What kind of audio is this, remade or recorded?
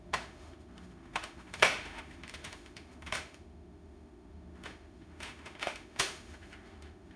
remade